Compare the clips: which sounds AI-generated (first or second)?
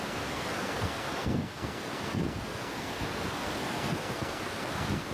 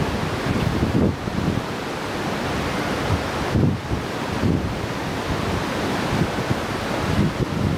first